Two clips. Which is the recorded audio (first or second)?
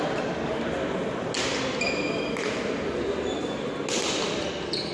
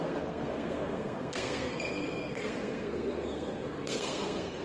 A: first